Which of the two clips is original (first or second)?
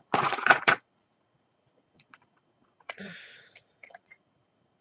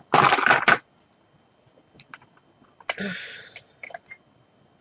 second